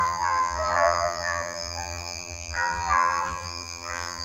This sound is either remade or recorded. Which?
remade